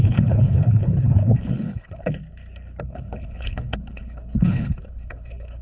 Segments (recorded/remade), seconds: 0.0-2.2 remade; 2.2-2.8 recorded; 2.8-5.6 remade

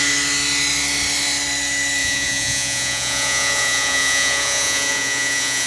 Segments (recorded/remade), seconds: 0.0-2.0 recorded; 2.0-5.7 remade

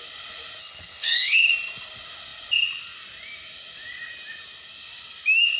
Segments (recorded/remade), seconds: 0.0-0.6 recorded; 0.6-1.5 remade; 1.5-5.6 recorded